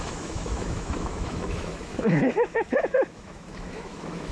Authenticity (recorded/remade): remade